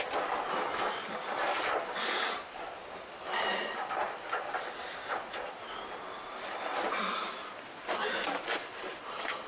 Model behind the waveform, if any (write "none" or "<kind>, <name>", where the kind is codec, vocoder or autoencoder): none